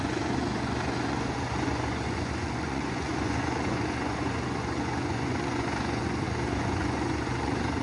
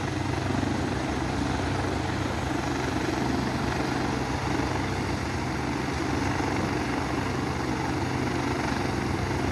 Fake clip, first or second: first